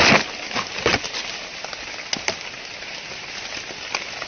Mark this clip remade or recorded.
recorded